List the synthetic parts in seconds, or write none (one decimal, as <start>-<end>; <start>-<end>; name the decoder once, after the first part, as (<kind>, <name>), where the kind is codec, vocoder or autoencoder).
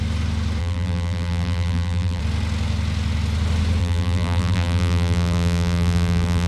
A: 0.6-2.2 (vocoder, BigVGAN v2); 3.8-6.5